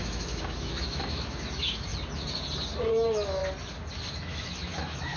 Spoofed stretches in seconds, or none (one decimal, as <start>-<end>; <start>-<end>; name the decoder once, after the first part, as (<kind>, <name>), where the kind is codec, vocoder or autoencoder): 0.0-1.9 (autoencoder, DAC-VAE); 2.9-3.4; 4.1-5.2